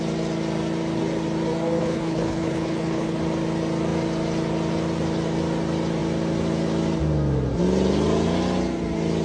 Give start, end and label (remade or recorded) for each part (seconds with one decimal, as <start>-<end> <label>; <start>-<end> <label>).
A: 0.0-1.8 recorded; 1.8-3.2 remade; 3.2-9.2 recorded